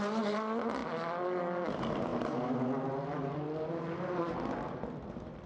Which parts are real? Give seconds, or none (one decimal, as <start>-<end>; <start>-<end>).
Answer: 0.0-5.5